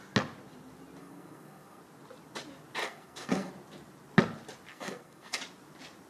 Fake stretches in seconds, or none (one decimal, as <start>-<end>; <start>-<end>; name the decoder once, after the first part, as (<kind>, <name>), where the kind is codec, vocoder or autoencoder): 1.0-1.8 (codec, SNAC); 2.8-3.5; 4.7-5.4